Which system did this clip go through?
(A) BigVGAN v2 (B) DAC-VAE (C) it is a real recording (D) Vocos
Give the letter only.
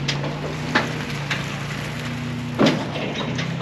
C